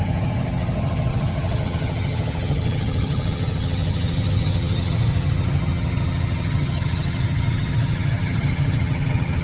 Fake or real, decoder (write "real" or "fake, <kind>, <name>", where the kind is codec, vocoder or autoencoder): fake, vocoder, HiFi-GAN